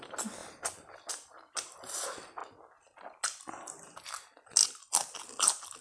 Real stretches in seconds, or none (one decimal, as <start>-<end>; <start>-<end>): 0.0-5.8